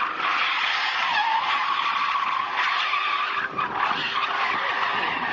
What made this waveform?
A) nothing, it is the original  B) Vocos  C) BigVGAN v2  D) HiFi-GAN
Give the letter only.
A